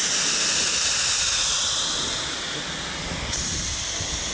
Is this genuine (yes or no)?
yes